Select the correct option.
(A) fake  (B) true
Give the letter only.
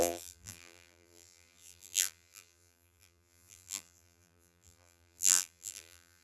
A